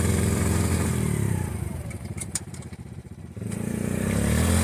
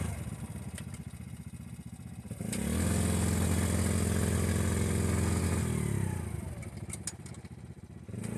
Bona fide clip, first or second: second